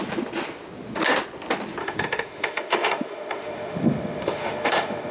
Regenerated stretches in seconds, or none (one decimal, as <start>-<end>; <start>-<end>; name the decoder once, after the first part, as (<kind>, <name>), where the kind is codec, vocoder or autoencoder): 1.8-5.1 (autoencoder, DAC-VAE)